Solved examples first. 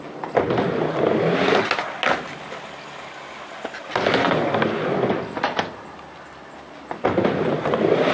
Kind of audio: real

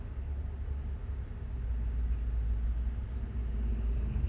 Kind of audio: real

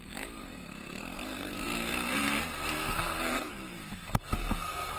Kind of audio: fake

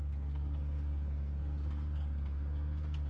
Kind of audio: fake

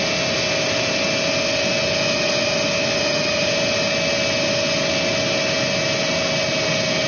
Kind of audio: real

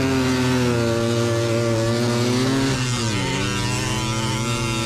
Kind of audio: real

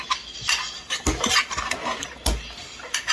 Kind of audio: real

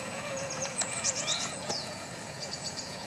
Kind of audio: fake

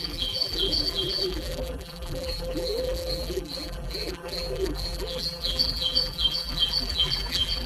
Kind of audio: fake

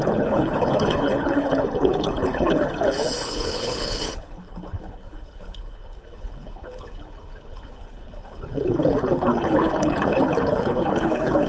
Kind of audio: fake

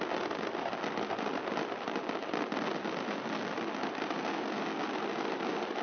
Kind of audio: real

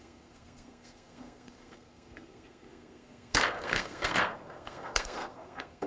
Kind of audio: fake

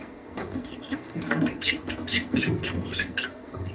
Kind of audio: fake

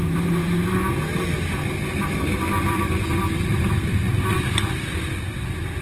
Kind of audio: real